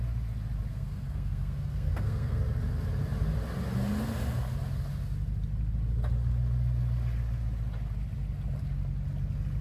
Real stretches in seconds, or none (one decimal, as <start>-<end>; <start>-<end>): 0.0-0.7; 2.4-9.6